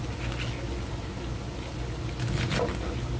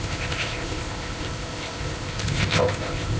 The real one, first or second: first